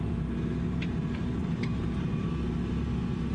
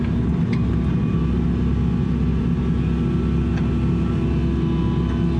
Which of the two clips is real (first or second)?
second